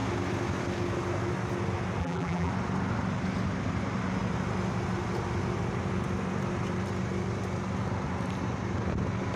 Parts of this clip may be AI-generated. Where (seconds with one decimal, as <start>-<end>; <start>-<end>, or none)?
2.0-2.5